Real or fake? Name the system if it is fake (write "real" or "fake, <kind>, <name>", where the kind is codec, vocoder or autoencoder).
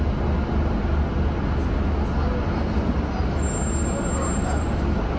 real